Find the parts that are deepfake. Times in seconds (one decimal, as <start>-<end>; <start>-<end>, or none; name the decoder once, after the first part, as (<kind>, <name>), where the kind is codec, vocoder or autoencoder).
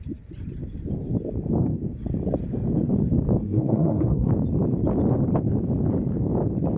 3.4-4.3 (codec, SNAC)